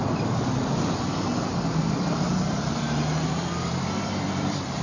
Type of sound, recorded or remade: remade